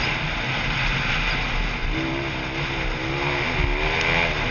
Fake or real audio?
real